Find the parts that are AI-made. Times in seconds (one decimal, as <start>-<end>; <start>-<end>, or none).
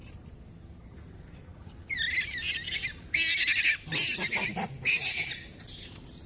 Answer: none